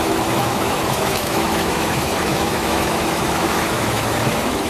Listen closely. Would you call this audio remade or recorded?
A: remade